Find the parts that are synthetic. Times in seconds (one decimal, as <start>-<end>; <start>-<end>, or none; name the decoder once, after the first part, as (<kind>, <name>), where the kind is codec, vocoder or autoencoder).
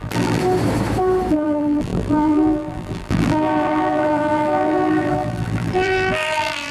0.0-0.4 (vocoder, BigVGAN v2); 1.3-6.7